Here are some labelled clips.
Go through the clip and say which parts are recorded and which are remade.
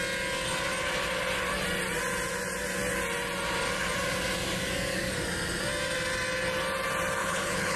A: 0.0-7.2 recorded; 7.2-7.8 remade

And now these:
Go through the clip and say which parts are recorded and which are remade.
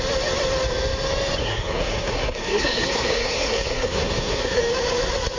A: 0.0-1.4 recorded; 1.4-4.6 remade; 4.6-5.4 recorded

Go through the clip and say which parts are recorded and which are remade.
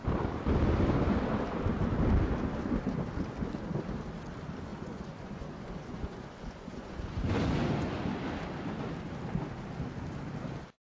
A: 0.0-4.7 recorded; 4.7-8.1 remade; 8.1-10.8 recorded